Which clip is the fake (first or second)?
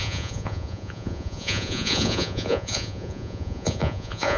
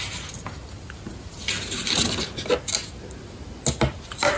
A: first